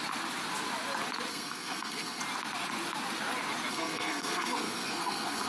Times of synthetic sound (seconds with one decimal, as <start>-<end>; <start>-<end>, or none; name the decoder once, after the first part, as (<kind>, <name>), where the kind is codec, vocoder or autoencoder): 1.3-2.2 (codec, SNAC); 3.7-5.5